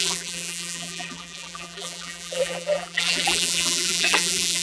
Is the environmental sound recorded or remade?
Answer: remade